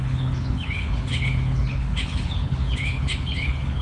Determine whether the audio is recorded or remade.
remade